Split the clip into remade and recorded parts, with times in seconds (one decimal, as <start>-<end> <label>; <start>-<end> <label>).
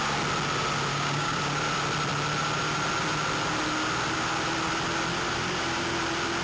0.0-0.9 recorded; 0.9-1.4 remade; 1.4-6.4 recorded